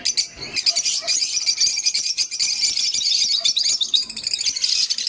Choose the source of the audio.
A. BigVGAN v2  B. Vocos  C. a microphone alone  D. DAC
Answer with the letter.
C